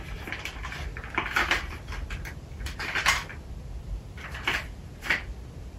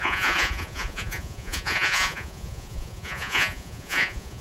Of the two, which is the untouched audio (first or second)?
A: first